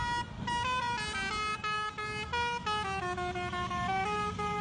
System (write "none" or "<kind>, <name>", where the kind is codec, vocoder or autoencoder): none